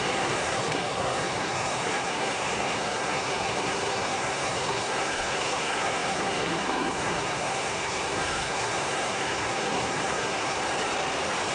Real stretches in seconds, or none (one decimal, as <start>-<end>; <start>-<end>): 10.6-11.5